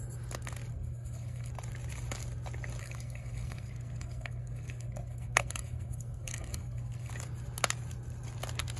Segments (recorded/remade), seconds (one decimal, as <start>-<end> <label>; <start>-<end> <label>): 0.0-0.7 recorded; 0.7-1.5 remade; 1.5-2.8 recorded; 2.8-7.1 remade; 7.1-8.8 recorded